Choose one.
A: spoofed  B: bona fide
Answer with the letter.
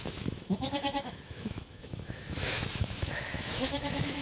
A